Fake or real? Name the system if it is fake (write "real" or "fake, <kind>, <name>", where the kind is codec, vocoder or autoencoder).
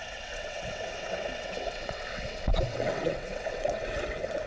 fake, vocoder, WaveNeXt